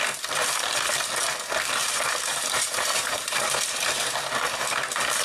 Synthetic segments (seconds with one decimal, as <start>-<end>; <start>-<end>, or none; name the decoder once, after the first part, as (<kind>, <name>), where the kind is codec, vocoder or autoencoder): 1.8-3.9 (vocoder, BigVGAN v2)